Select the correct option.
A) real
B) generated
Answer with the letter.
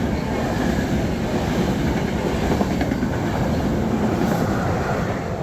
A